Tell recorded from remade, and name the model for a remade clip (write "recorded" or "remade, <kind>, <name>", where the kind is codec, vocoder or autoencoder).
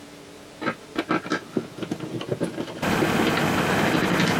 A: recorded